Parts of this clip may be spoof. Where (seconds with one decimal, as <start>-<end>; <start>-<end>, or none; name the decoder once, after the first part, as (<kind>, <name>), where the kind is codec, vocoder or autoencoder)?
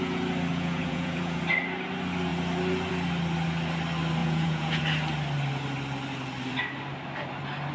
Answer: 0.5-1.4 (vocoder, Vocos); 4.2-4.8